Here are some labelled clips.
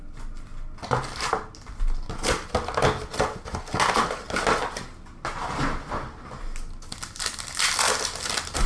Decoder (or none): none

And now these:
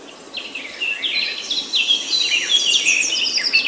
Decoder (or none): none